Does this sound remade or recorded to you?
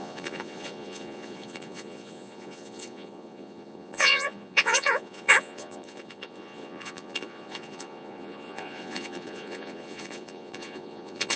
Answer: remade